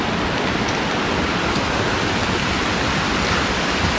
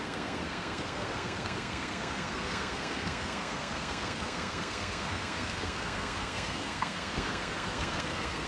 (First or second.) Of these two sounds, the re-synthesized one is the second